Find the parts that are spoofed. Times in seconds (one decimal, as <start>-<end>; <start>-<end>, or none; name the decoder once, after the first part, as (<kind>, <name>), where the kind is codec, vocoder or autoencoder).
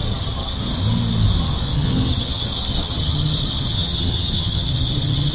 0.0-0.6 (vocoder, HiFi-GAN); 1.7-5.3